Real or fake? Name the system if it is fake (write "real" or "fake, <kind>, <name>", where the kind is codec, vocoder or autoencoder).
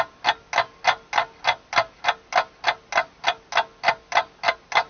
real